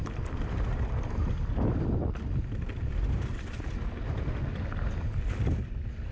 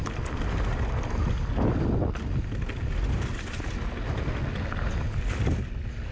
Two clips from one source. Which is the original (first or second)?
second